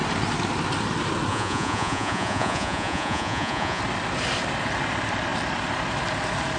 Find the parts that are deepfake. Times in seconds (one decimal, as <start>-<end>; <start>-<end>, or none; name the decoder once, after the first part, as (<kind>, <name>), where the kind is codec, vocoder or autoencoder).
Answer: 1.3-3.8 (vocoder, Vocos)

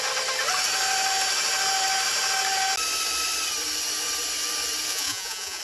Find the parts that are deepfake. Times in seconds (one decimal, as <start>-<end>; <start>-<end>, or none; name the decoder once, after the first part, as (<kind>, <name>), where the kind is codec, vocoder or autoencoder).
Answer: 4.9-5.6 (vocoder, Vocos)